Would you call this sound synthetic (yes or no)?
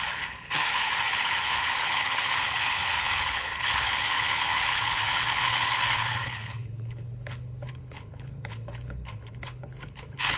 yes